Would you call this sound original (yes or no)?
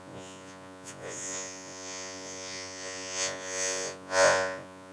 no